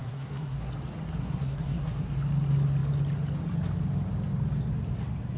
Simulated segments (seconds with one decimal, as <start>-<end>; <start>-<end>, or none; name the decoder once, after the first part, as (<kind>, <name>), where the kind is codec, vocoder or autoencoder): 0.0-0.7 (codec, SNAC); 1.2-2.1

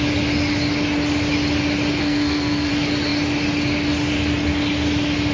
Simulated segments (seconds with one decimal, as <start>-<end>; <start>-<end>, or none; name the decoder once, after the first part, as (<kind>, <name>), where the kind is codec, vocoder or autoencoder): 2.0-2.7 (codec, SNAC)